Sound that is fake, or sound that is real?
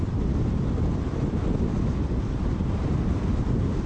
fake